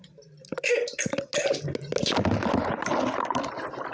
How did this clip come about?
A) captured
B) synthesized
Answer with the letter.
A